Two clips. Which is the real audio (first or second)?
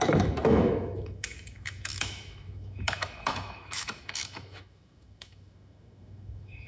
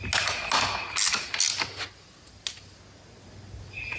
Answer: second